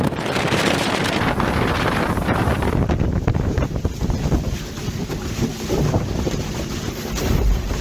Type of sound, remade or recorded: remade